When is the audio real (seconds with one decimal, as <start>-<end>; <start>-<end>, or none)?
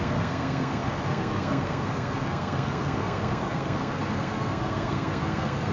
none